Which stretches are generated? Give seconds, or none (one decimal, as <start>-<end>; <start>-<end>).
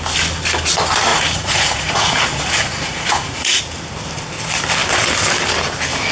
1.1-3.6